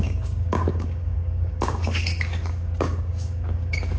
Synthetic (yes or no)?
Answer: yes